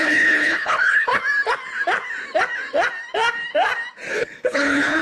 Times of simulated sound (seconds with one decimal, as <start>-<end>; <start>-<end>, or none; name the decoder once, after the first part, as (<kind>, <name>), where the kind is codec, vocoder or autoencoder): 0.0-1.1 (codec, HILCodec); 4.1-5.0